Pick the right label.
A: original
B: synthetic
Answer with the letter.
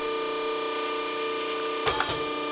A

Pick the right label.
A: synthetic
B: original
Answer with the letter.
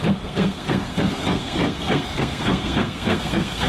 A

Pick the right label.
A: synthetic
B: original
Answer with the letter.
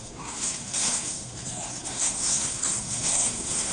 A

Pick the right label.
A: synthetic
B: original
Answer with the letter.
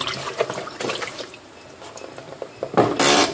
B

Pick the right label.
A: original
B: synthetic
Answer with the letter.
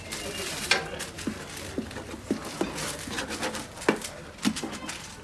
A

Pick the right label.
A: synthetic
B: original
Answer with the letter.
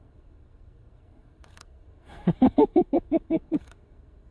A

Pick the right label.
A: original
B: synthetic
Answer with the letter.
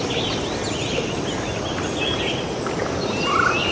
A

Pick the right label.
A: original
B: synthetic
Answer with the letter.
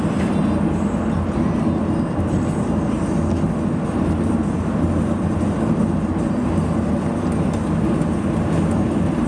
A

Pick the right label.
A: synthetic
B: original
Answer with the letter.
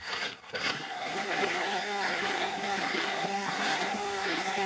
A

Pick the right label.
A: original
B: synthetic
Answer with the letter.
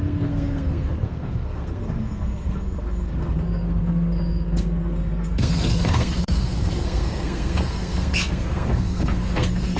B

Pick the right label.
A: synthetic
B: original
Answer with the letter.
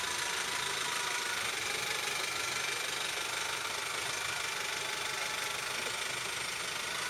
B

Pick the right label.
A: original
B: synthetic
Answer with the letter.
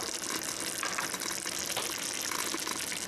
A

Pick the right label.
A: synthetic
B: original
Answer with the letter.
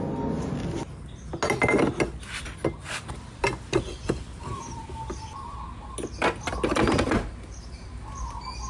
B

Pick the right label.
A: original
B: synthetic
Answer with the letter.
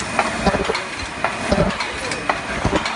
A